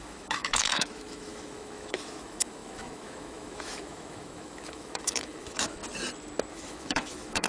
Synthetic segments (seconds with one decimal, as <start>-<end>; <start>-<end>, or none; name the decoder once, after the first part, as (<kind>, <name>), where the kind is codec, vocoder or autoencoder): 0.0-5.8 (autoencoder, DAC-VAE); 6.5-7.5